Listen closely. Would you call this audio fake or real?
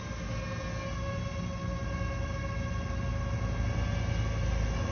real